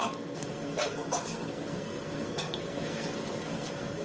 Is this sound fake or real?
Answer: fake